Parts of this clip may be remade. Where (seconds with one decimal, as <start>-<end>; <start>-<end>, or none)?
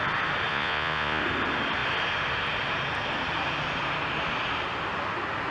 0.5-1.2